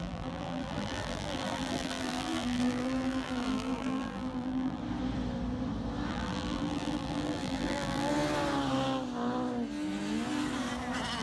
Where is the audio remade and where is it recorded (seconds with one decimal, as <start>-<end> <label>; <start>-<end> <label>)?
0.0-4.8 remade; 4.8-6.1 recorded; 6.1-8.1 remade; 8.1-11.2 recorded